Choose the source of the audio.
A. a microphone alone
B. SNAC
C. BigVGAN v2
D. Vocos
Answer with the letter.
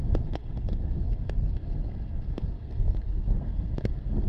B